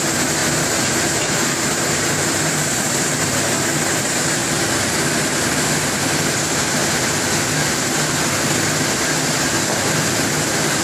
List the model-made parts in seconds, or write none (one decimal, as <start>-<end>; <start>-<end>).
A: 0.0-4.4; 6.0-6.8; 9.7-10.8